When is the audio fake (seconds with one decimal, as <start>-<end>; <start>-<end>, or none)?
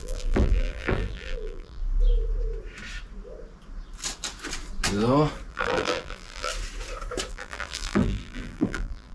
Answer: 0.0-1.8; 5.5-6.5; 7.3-9.1